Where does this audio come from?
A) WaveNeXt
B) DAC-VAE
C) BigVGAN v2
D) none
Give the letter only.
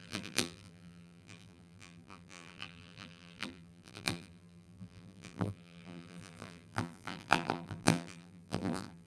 C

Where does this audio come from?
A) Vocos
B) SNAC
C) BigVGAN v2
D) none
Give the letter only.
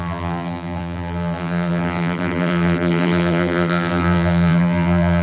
C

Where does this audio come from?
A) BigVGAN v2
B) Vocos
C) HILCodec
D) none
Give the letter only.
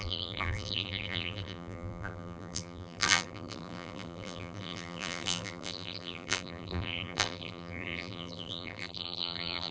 A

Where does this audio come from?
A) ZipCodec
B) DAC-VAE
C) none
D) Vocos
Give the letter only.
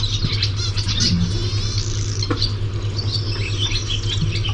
C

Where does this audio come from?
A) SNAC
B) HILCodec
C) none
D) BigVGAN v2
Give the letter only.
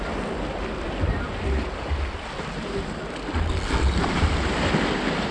C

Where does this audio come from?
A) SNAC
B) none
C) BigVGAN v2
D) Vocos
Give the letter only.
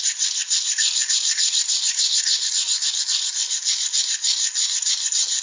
B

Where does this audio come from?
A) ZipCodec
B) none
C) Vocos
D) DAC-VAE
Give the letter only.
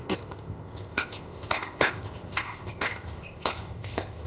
A